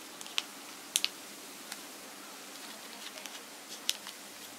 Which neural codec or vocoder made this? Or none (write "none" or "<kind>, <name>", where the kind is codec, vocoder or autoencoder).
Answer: none